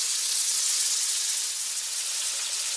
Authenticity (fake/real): fake